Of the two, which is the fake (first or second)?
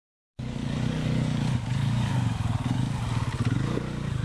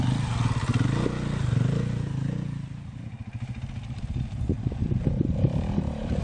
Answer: first